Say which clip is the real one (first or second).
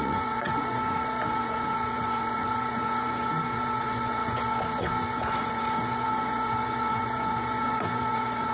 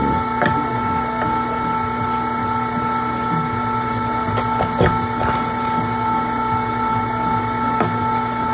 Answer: second